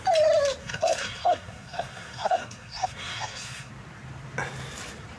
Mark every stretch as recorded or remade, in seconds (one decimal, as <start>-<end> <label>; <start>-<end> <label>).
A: 0.0-0.6 recorded; 0.6-3.7 remade; 3.7-5.2 recorded